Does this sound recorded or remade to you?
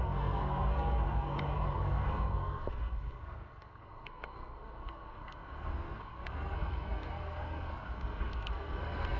remade